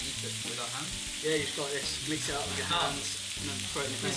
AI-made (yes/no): no